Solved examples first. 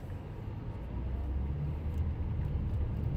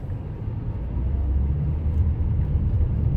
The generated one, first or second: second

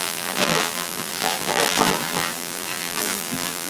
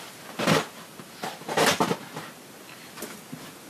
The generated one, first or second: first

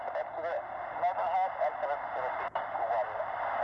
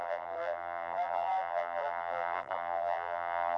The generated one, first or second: second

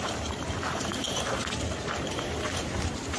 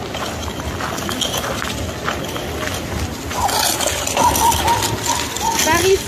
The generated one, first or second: first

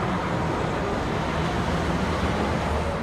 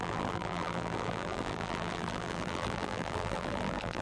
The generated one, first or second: second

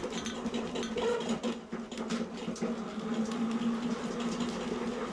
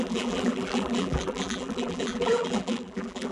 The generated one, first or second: second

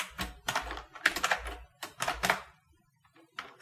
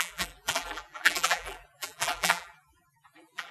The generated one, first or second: second